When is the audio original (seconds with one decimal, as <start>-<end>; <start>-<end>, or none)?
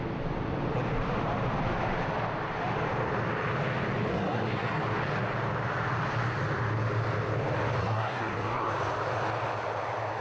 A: 0.0-4.1; 4.8-7.8; 8.7-10.2